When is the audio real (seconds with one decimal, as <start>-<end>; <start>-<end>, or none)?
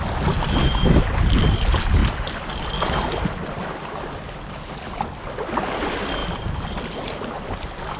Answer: 0.0-0.6; 1.2-8.0